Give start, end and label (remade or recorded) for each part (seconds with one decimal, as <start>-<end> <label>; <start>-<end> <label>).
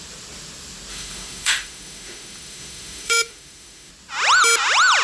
0.0-0.9 recorded; 0.9-3.9 remade; 3.9-5.0 recorded